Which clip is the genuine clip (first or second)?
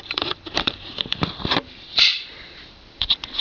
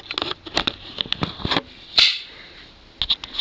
second